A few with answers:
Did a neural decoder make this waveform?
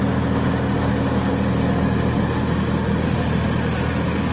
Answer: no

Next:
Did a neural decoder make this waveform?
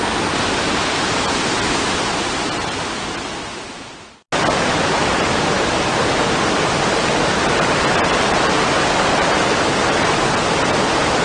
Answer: no